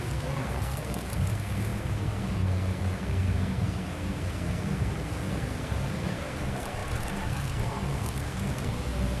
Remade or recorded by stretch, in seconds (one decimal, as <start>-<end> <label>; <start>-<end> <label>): 0.0-9.2 remade